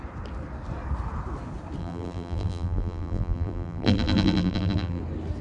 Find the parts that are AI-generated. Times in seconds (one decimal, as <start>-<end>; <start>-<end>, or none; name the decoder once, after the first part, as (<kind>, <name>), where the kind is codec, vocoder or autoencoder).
1.8-5.0 (vocoder, BigVGAN v2)